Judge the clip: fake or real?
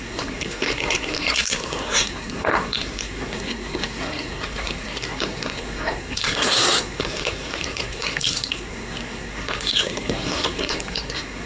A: fake